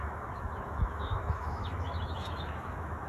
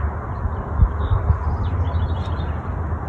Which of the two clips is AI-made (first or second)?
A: first